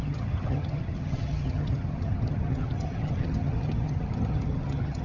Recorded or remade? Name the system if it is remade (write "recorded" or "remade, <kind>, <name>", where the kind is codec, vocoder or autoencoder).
remade, vocoder, HiFi-GAN